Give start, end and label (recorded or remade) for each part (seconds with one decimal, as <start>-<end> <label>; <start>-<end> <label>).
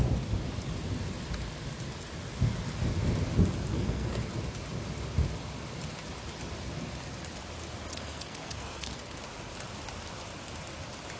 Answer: 0.0-3.7 recorded; 3.7-4.2 remade; 4.2-7.9 recorded; 7.9-9.2 remade; 9.2-11.2 recorded